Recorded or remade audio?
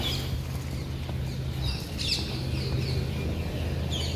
recorded